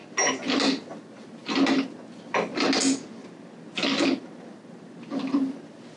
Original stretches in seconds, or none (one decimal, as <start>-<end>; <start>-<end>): 0.0-6.0